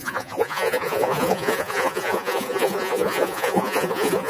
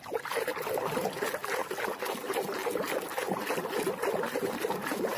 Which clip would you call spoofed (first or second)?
first